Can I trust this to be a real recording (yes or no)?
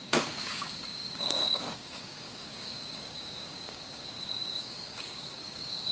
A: no